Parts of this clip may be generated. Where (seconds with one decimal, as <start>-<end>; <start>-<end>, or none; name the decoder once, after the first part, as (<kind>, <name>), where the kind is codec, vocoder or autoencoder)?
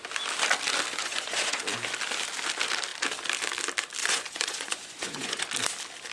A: 1.0-1.6 (vocoder, Vocos); 4.0-5.4